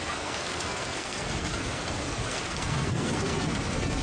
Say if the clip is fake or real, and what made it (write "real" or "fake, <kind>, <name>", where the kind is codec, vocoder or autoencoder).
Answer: fake, codec, SNAC